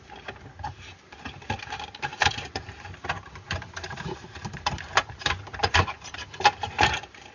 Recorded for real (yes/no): no